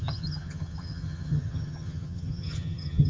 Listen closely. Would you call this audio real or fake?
fake